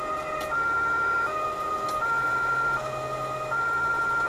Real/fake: real